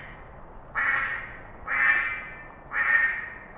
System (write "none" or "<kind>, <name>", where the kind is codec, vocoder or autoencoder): none